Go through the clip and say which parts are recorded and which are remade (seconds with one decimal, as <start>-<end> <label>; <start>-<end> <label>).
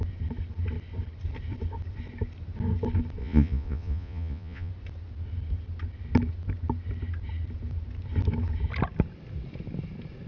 0.0-3.2 recorded; 3.2-4.7 remade; 4.7-10.3 recorded